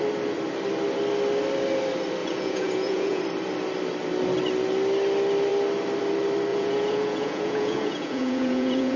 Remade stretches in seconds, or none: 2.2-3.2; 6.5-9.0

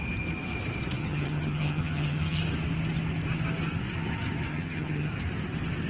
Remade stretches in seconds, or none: 1.0-2.4; 4.5-5.1

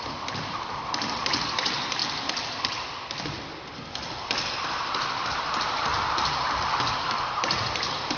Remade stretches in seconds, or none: 0.0-2.0; 5.3-5.9; 6.9-8.2

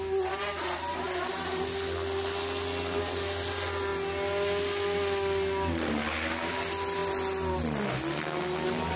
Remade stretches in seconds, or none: none